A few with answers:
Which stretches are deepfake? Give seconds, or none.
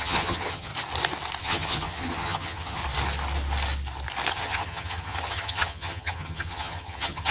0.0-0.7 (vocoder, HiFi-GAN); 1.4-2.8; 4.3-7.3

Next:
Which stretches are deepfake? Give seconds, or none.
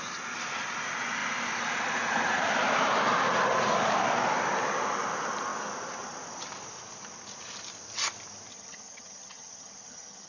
8.5-10.3 (vocoder, HiFi-GAN)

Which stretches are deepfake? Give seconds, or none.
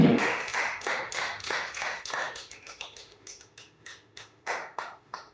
0.0-5.3 (autoencoder, DAC-VAE)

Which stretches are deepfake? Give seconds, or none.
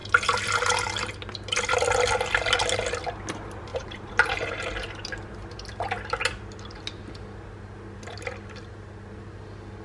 3.7-4.7 (vocoder, BigVGAN v2)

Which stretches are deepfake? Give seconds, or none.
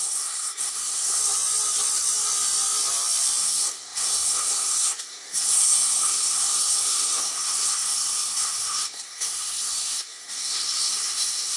0.0-1.2 (codec, SNAC); 3.4-11.6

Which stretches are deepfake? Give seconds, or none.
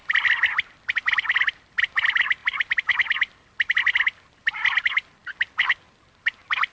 none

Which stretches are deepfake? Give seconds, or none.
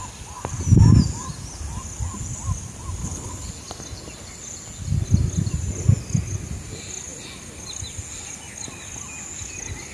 3.0-3.5 (codec, HILCodec)